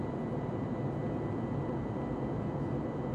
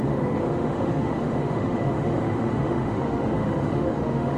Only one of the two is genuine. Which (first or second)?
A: first